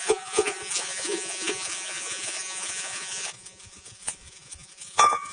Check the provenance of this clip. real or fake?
fake